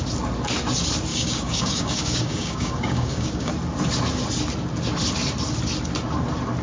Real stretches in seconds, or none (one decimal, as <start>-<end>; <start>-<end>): 0.0-1.1; 3.5-6.6